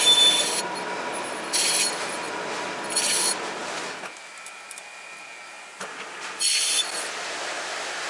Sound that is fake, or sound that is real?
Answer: real